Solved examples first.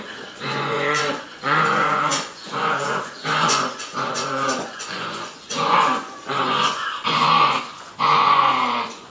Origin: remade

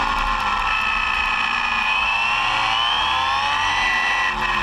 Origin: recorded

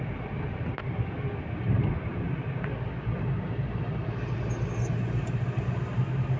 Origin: recorded